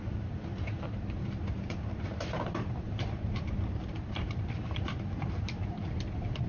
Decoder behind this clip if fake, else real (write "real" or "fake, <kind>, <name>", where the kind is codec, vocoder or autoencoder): fake, vocoder, BigVGAN v2